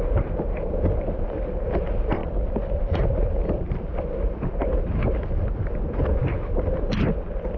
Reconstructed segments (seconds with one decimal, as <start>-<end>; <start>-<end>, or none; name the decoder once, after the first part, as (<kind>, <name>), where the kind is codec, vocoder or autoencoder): 0.5-1.1 (vocoder, BigVGAN v2); 2.2-2.8; 6.2-6.9